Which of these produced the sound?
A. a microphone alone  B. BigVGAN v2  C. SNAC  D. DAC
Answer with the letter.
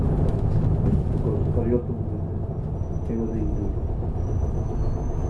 A